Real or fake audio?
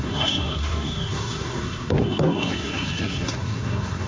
fake